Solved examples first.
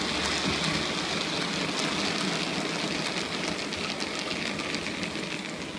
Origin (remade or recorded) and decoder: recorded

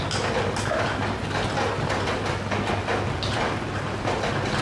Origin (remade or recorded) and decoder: recorded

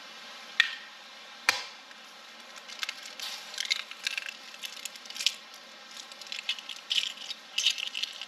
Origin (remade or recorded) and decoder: recorded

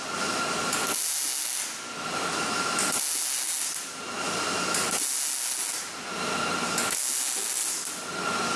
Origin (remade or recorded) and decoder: recorded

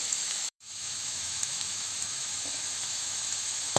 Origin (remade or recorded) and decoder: remade, autoencoder, DAC-VAE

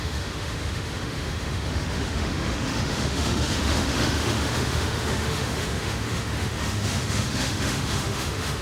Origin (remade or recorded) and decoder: remade, autoencoder, DAC-VAE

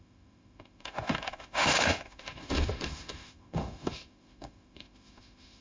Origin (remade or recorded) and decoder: remade, autoencoder, DAC-VAE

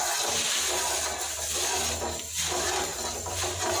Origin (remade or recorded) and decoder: recorded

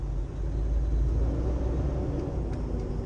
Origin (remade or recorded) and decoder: recorded